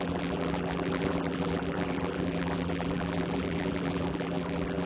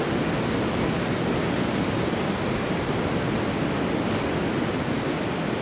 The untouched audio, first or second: second